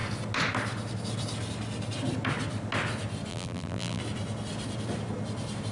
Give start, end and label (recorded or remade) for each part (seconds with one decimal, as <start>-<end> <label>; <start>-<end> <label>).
0.0-3.3 recorded; 3.3-4.0 remade; 4.0-5.7 recorded